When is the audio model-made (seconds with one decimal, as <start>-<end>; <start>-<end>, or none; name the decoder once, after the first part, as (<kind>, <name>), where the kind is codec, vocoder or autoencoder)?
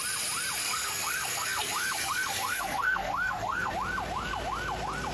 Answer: 0.6-3.7 (codec, SNAC)